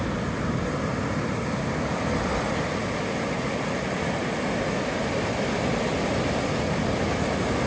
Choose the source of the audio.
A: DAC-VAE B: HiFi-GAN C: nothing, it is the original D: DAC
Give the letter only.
C